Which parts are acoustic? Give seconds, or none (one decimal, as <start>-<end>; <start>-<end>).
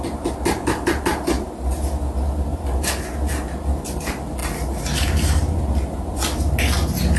0.0-7.2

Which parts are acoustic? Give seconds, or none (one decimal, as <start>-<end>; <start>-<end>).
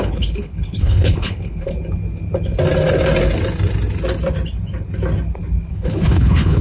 1.7-5.7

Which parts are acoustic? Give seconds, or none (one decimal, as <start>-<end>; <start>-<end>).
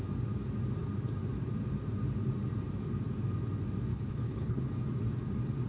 0.0-3.9; 4.6-5.7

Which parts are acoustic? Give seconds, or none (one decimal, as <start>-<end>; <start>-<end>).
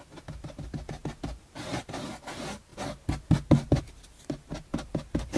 0.0-5.4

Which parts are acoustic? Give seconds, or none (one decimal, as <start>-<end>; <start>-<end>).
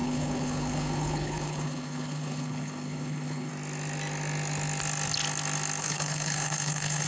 3.5-5.8